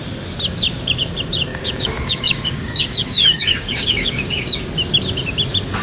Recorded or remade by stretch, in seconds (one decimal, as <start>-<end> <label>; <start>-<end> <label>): 0.0-1.5 recorded; 1.5-4.6 remade; 4.6-5.8 recorded